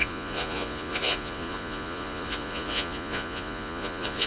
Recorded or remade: remade